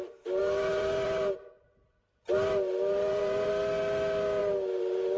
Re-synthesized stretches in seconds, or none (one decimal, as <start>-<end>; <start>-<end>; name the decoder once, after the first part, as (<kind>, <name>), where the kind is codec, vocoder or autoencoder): 0.4-3.5 (vocoder, BigVGAN v2); 4.4-5.2